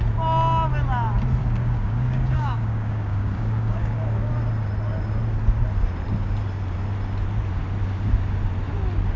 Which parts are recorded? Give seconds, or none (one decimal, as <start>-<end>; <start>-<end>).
0.0-1.4; 4.3-9.2